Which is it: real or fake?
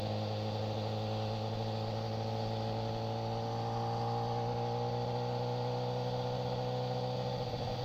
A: real